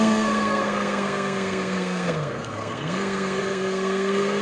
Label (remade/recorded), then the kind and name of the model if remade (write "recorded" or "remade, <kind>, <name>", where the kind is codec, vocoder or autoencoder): remade, codec, SNAC